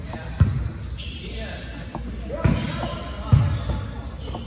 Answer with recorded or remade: recorded